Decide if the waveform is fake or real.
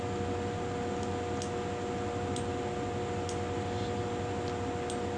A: real